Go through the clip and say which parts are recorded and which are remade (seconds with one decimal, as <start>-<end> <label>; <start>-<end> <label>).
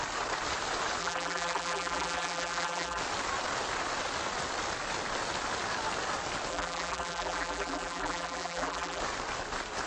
0.0-1.0 recorded; 1.0-3.0 remade; 3.0-6.5 recorded; 6.5-9.0 remade; 9.0-9.9 recorded